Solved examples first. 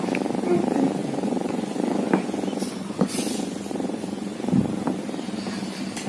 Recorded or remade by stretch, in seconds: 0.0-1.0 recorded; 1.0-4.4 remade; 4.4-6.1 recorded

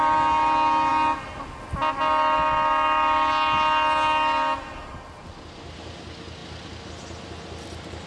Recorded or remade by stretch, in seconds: 0.0-8.1 recorded

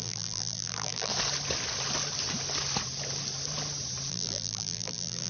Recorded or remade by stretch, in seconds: 0.0-1.1 remade; 1.1-4.1 recorded; 4.1-5.3 remade

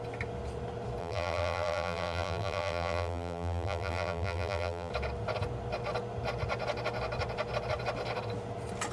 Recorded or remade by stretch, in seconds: 0.0-1.0 recorded; 1.0-4.9 remade; 4.9-8.9 recorded

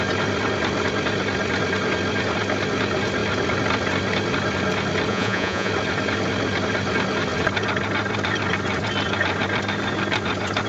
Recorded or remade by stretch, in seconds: 0.0-5.1 recorded; 5.1-5.7 remade; 5.7-10.7 recorded